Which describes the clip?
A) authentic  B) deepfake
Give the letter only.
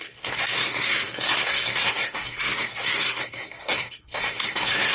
B